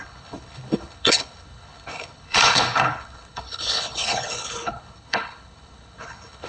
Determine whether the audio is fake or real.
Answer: fake